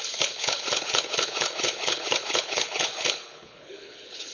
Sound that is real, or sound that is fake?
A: fake